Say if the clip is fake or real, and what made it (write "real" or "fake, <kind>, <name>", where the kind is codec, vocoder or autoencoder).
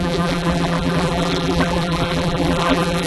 fake, vocoder, BigVGAN v2